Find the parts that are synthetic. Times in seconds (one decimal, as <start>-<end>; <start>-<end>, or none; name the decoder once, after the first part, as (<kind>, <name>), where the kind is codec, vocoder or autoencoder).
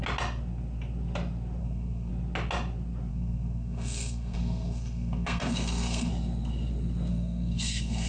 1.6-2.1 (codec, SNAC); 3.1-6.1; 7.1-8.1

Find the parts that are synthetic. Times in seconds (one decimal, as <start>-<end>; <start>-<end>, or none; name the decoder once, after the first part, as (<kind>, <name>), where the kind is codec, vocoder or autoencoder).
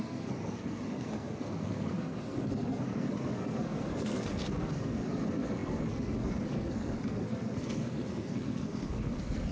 0.0-9.5 (codec, SNAC)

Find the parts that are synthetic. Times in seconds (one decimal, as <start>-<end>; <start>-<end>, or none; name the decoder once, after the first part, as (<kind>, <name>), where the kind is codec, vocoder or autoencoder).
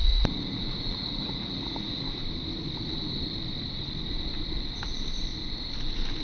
0.0-2.2 (vocoder, Vocos)